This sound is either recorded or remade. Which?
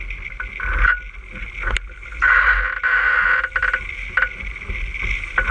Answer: recorded